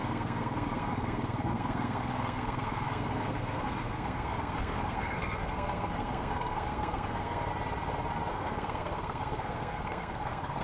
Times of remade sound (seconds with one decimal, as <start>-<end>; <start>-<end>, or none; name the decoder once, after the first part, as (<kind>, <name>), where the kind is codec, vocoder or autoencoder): 0.0-7.5 (codec, SNAC); 8.3-10.6

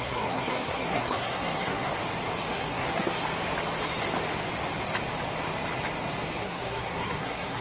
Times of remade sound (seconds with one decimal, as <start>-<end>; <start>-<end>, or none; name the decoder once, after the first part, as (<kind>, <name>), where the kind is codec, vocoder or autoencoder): 0.0-1.9 (codec, SNAC); 2.5-3.2; 6.4-7.6

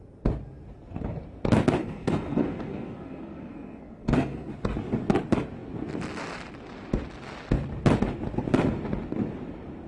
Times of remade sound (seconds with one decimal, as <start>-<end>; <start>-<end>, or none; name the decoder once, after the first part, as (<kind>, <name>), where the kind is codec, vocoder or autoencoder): 1.8-4.5 (codec, SNAC)

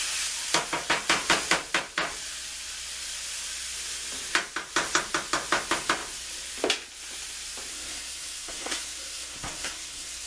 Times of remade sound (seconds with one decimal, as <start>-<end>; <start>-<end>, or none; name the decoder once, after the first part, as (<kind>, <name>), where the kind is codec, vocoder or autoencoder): 7.7-10.3 (codec, SNAC)

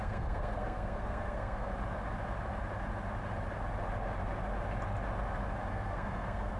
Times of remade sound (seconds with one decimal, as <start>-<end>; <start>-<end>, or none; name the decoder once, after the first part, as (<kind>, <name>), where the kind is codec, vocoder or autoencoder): 0.0-1.7 (codec, SNAC); 5.7-6.6